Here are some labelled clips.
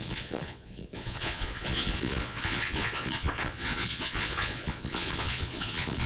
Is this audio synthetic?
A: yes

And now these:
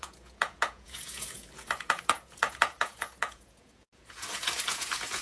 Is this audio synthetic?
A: yes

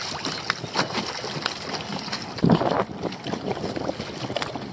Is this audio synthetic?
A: no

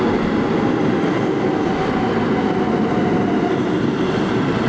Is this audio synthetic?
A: no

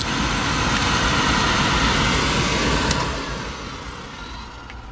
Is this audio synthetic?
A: no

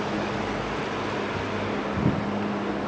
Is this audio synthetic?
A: no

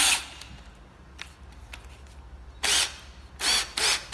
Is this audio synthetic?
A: no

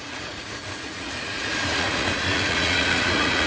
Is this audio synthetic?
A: yes